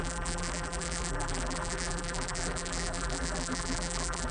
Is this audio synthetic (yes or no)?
yes